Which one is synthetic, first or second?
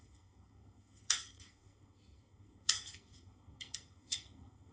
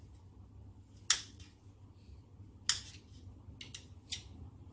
first